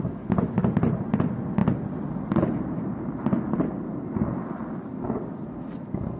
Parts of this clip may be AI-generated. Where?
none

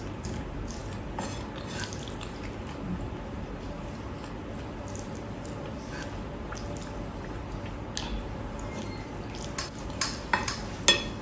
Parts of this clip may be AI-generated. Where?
none

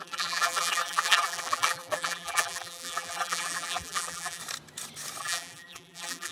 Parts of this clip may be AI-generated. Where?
0.0-4.4 (vocoder, BigVGAN v2); 5.2-6.3

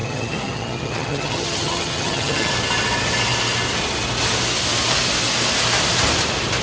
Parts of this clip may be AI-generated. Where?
0.0-2.5 (vocoder, HiFi-GAN)

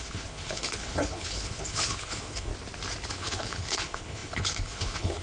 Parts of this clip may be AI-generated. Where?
0.0-2.5 (codec, HILCodec); 3.1-5.2